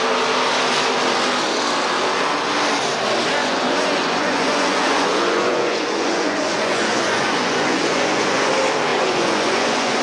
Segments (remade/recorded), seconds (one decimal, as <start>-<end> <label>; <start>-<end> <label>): 0.0-3.4 recorded; 3.4-8.5 remade; 8.5-8.9 recorded; 8.9-10.0 remade